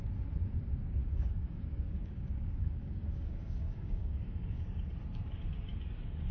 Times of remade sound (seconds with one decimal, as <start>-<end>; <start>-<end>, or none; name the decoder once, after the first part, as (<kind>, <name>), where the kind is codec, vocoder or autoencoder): 1.0-4.8 (codec, DAC)